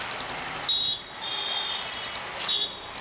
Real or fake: real